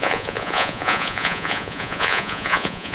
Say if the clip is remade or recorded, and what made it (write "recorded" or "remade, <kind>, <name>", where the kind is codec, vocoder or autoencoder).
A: remade, vocoder, Vocos